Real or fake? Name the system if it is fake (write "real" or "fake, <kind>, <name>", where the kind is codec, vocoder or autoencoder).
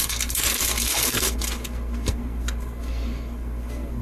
fake, codec, SNAC